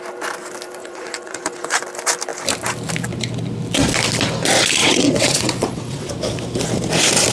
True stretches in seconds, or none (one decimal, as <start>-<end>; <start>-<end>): 0.0-0.8; 1.8-4.8; 6.1-7.3